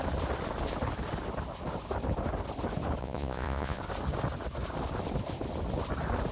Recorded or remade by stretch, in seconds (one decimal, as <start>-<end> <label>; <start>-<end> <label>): 0.0-3.0 recorded; 3.0-3.8 remade; 3.8-6.3 recorded